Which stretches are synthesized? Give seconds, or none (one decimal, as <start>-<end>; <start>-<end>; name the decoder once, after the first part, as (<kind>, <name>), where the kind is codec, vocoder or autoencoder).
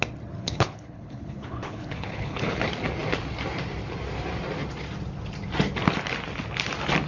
0.4-2.6 (codec, HILCodec)